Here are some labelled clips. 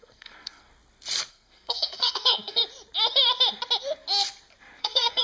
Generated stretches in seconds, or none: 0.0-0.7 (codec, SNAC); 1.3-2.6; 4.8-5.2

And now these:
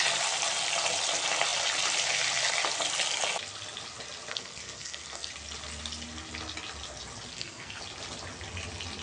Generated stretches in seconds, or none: 4.3-5.3 (codec, SNAC); 7.3-7.8

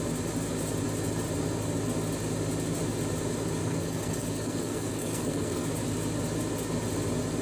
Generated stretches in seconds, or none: 3.6-5.7 (codec, SNAC)

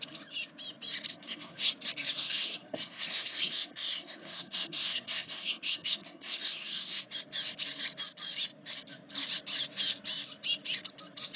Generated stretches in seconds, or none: 1.1-1.7 (codec, SNAC); 2.2-7.0

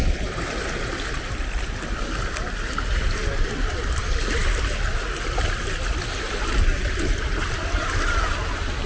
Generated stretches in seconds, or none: none